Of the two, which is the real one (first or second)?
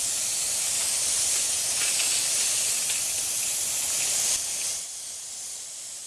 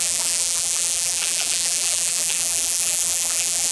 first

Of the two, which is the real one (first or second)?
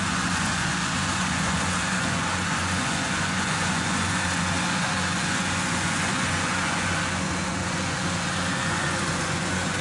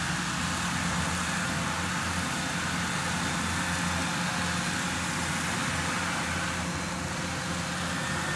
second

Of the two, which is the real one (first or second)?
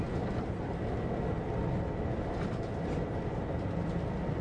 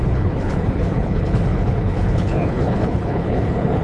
first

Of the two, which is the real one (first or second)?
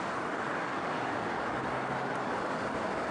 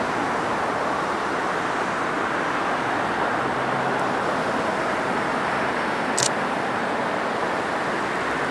second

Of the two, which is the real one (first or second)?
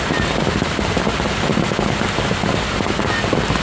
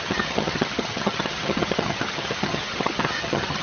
first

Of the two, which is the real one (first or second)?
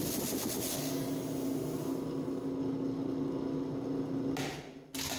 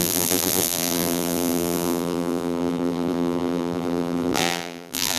first